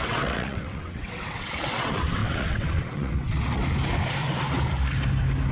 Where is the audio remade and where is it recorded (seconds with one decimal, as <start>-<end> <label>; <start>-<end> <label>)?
0.0-3.6 remade; 3.6-5.5 recorded